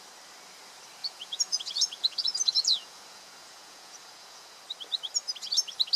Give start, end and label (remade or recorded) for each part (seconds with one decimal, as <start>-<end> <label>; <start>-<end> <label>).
0.0-1.0 recorded; 1.0-4.6 remade; 4.6-6.0 recorded